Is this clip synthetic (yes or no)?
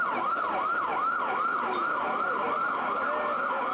no